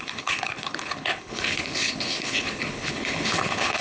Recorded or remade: remade